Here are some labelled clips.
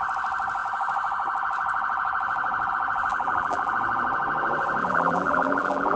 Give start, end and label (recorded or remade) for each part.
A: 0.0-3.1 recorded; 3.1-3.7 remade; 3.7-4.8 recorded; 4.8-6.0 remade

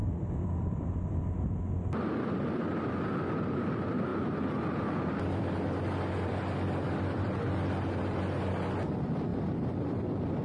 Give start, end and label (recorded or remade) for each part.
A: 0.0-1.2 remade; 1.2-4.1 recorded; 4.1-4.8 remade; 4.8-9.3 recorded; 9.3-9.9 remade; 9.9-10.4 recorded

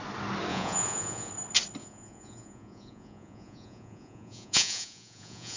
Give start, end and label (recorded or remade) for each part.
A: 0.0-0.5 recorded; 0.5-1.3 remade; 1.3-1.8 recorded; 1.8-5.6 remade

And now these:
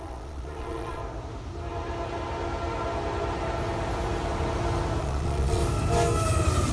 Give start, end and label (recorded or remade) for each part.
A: 0.0-1.0 remade; 1.0-5.0 recorded; 5.0-5.6 remade; 5.6-6.7 recorded

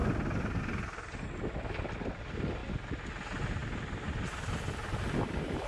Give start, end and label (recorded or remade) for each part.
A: 0.0-2.6 recorded; 2.6-3.1 remade; 3.1-3.6 recorded; 3.6-5.7 remade

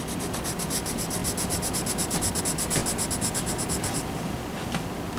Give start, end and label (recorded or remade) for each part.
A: 0.0-5.2 recorded

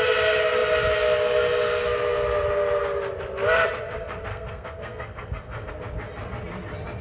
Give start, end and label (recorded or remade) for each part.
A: 0.0-4.3 recorded; 4.3-5.7 remade; 5.7-7.0 recorded

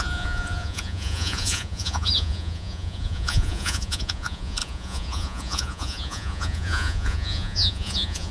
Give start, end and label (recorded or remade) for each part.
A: 0.0-8.3 remade